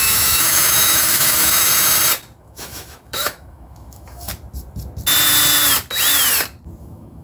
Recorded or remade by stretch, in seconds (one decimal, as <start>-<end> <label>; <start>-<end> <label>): 0.0-1.7 remade; 1.7-2.4 recorded; 2.4-4.3 remade; 4.3-6.8 recorded; 6.8-7.2 remade